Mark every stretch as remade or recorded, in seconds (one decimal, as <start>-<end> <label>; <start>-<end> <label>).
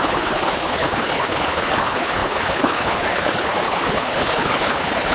0.0-5.1 remade